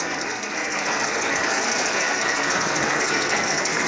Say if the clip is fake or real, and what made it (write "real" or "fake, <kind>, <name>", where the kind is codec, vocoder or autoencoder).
fake, codec, SNAC